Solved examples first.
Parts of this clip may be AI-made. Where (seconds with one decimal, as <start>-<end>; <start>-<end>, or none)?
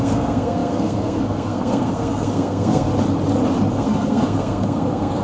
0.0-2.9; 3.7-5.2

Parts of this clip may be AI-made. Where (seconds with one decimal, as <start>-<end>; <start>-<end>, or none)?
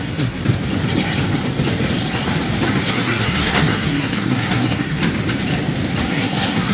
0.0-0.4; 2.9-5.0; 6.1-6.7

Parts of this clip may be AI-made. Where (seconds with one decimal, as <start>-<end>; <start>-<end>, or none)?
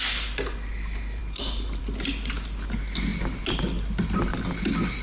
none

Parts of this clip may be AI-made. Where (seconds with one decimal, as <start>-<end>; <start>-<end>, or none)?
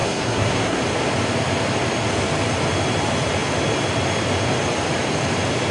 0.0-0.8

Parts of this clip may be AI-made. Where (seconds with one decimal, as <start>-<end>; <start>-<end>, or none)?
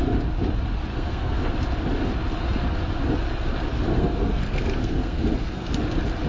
0.9-1.5; 3.9-5.7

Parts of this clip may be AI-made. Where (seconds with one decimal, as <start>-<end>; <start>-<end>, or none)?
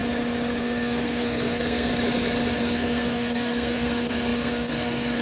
0.6-1.9; 2.6-5.2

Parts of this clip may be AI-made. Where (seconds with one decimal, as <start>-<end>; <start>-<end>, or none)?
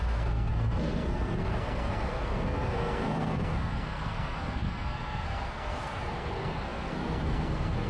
0.0-7.9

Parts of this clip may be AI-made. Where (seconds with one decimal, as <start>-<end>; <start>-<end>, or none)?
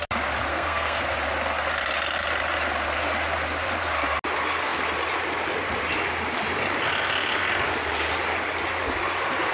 0.5-1.0